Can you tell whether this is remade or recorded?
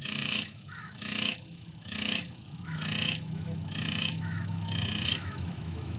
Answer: remade